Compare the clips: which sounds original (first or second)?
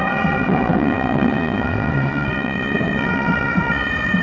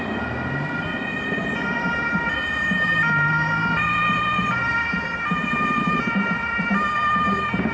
second